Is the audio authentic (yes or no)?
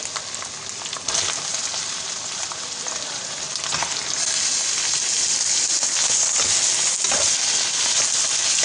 yes